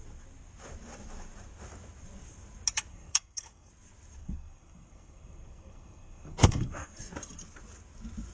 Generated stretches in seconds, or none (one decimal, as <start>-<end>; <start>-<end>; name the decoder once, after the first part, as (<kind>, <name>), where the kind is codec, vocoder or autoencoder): 2.9-3.7 (codec, SNAC); 4.2-7.0